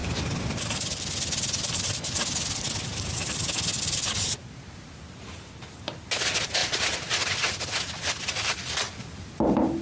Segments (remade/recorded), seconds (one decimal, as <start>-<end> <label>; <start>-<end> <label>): 0.0-6.6 recorded; 6.6-7.8 remade; 7.8-9.8 recorded